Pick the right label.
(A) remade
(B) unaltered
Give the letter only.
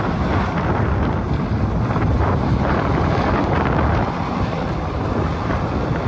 B